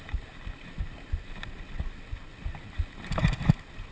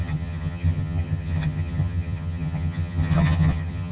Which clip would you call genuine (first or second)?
first